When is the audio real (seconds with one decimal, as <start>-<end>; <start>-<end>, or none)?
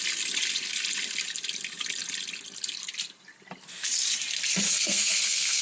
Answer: 0.0-4.7